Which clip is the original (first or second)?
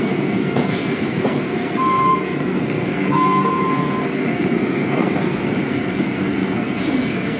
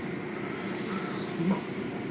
second